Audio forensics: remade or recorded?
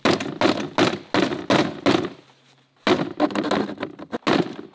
recorded